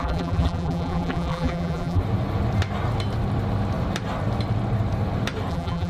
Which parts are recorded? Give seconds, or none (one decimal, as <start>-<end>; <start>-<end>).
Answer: 2.0-5.5